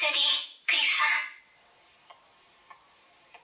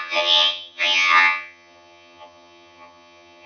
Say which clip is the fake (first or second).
second